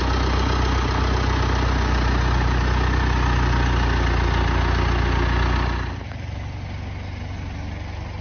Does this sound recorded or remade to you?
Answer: recorded